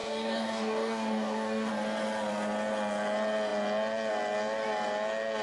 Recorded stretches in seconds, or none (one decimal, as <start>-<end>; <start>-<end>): 1.7-5.4